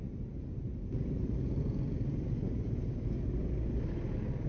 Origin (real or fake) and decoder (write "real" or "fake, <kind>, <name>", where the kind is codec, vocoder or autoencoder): real